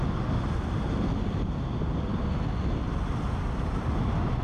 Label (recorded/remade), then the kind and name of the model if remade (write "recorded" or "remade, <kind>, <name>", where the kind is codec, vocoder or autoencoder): recorded